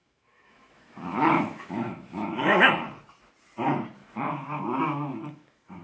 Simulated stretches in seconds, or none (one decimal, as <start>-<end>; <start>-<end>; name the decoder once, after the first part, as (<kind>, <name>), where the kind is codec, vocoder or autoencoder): 0.0-2.7 (autoencoder, DAC-VAE); 4.0-5.8